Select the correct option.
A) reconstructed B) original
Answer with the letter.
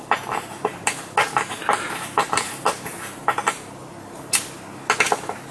B